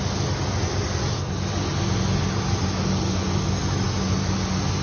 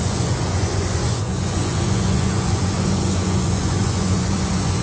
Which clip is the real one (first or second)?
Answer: first